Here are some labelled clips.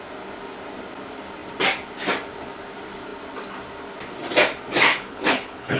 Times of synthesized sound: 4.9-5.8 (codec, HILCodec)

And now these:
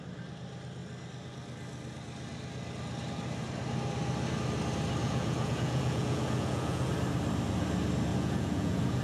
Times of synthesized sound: 5.0-6.9 (vocoder, Vocos); 8.1-9.0

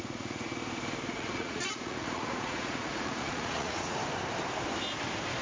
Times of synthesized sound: 0.0-0.5 (vocoder, Vocos); 1.1-4.0